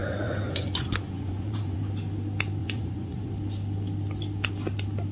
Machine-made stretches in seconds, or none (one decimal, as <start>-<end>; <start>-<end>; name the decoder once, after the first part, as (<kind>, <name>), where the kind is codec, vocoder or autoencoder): 0.0-1.8 (vocoder, Vocos); 2.6-3.3

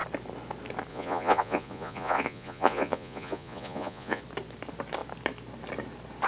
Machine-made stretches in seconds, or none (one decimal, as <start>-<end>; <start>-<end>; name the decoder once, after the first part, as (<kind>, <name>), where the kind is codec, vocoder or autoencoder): 0.9-4.2 (vocoder, Vocos)

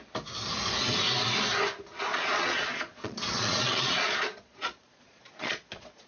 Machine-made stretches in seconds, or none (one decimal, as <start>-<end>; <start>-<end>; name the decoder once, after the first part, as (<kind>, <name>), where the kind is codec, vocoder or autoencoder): 2.1-6.1 (vocoder, Vocos)

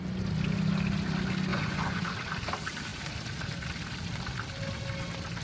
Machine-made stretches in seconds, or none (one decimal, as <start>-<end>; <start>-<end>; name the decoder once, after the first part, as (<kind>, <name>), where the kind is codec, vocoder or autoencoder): 1.5-2.1 (vocoder, Vocos)

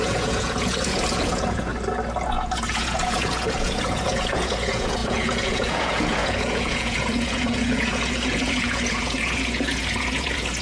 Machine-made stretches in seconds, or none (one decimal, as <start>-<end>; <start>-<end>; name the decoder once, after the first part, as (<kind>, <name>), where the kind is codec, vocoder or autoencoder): 0.0-1.7 (vocoder, Vocos); 2.3-10.6

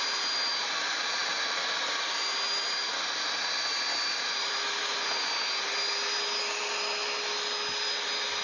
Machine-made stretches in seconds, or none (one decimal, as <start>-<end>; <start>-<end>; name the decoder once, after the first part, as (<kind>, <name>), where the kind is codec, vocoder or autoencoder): none

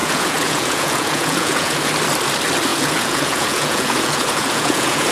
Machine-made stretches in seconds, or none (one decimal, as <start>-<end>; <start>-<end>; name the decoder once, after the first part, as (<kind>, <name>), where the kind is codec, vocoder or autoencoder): 0.0-1.9 (vocoder, Vocos); 2.7-5.1